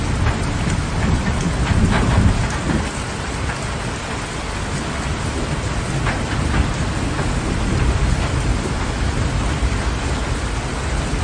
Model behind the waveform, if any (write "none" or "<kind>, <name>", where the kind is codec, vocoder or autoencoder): none